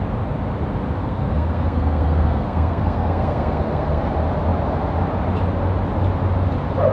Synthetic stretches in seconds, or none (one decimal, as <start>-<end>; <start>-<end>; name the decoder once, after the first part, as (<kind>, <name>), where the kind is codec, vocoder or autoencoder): 1.0-4.1 (codec, SNAC)